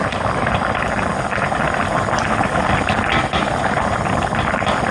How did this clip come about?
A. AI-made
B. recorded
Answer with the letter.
B